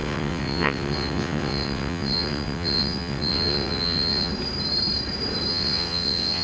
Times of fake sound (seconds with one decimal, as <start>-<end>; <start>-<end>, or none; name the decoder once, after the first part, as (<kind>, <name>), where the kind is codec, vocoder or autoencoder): 0.0-4.3 (vocoder, WaveNeXt); 5.5-6.4